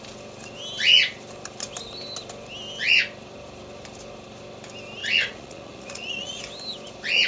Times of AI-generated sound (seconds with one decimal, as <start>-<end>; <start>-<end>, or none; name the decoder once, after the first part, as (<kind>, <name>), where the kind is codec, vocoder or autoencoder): 5.0-6.4 (vocoder, Vocos)